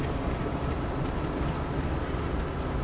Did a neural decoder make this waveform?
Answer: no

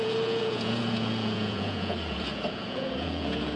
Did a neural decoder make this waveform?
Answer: yes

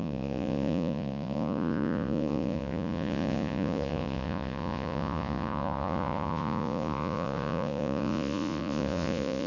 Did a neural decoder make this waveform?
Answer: yes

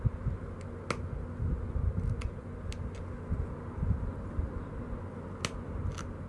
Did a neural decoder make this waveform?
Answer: no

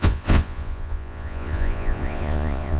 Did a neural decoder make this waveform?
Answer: yes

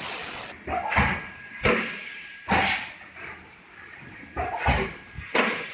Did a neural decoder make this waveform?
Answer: no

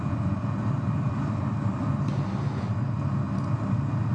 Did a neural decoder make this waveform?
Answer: no